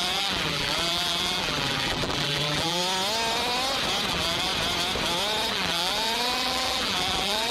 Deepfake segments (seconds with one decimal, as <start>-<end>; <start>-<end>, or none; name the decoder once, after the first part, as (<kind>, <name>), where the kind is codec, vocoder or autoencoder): 0.0-2.8 (vocoder, BigVGAN v2); 4.1-4.5; 5.5-7.5